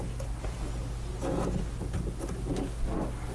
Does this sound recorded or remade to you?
recorded